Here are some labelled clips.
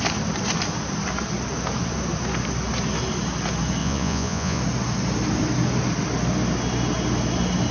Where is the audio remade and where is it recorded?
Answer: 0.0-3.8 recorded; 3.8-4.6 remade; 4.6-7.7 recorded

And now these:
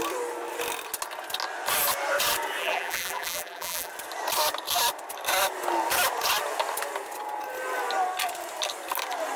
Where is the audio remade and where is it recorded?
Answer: 0.0-2.6 recorded; 2.6-3.9 remade; 3.9-9.4 recorded

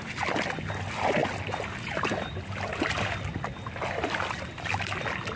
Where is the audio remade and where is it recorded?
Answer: 0.0-5.4 recorded

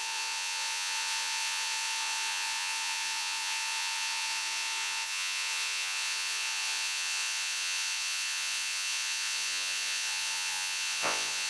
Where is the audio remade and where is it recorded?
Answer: 0.0-11.5 remade